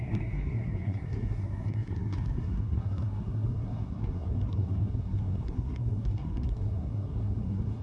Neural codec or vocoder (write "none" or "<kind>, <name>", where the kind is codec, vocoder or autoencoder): codec, SNAC